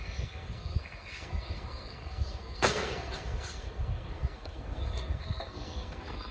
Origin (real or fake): fake